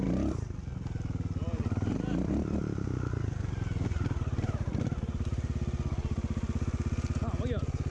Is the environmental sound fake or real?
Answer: real